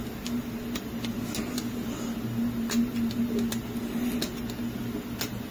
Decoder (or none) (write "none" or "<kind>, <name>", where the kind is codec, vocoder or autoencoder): none